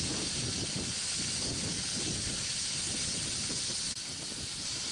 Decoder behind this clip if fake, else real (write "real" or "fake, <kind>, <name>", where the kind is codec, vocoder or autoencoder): real